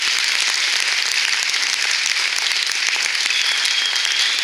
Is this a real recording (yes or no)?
yes